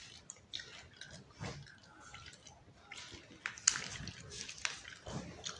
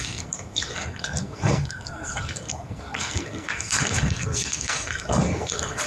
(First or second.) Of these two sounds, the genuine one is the first